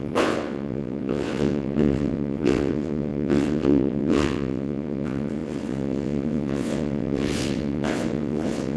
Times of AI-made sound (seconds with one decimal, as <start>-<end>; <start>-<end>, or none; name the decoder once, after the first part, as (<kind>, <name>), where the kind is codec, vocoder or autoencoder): 0.0-8.8 (vocoder, WaveNeXt)